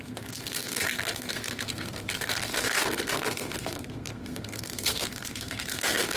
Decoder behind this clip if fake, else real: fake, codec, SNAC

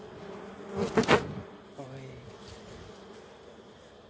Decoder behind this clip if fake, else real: real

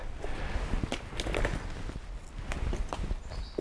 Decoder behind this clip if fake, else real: real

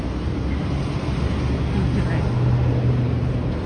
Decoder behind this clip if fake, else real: real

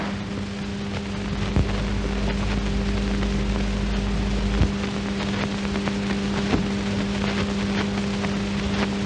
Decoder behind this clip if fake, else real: real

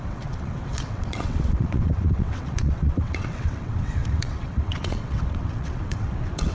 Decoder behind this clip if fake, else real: fake, vocoder, WaveNeXt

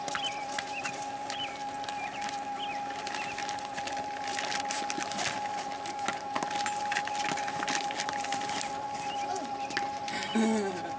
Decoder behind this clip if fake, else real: real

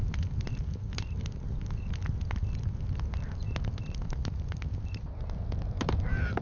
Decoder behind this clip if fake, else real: real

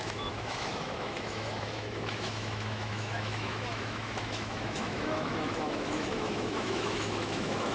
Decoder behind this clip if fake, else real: fake, autoencoder, DAC-VAE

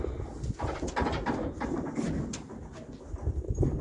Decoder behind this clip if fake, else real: real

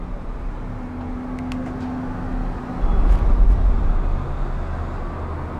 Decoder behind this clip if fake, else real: real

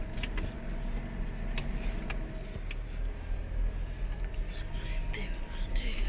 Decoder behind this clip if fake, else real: real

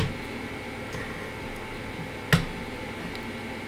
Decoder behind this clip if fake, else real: real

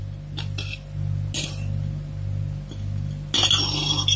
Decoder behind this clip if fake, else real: real